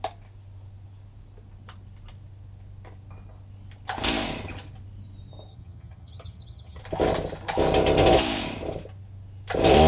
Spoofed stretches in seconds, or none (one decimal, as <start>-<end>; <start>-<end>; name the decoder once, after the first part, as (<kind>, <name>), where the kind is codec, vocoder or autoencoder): 5.5-6.8 (vocoder, HiFi-GAN)